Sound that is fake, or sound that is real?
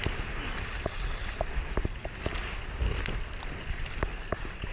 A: real